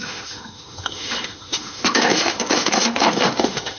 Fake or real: fake